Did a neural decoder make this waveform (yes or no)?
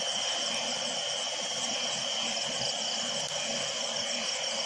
no